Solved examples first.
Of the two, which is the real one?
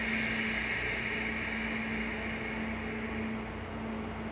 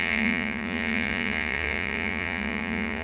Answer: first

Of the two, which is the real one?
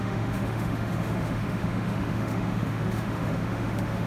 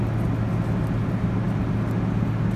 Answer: second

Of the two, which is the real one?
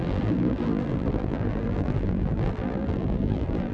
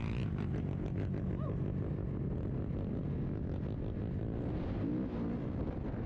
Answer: second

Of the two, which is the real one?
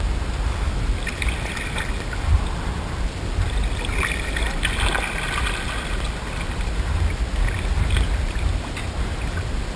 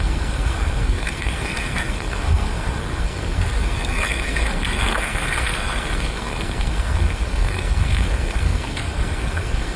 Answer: first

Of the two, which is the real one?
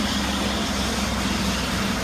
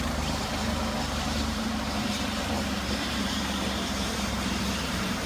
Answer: first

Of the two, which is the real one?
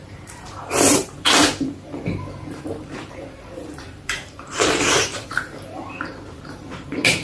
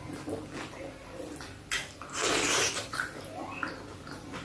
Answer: second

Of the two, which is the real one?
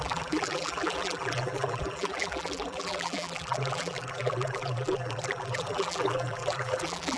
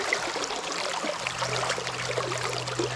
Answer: second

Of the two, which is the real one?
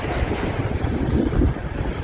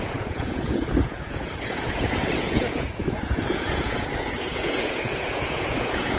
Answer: first